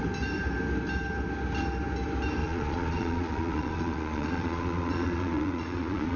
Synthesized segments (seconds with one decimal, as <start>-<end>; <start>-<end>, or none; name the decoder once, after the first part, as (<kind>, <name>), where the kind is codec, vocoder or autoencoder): 2.4-6.2 (vocoder, Vocos)